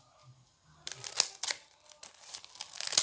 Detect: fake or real real